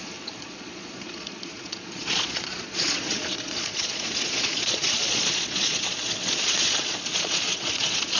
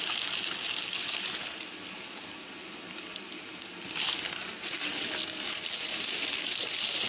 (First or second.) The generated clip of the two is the first